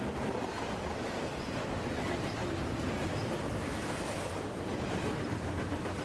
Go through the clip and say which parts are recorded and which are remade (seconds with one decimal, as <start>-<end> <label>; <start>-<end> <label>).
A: 0.0-2.4 recorded; 2.4-3.3 remade; 3.3-4.3 recorded; 4.3-5.1 remade; 5.1-6.0 recorded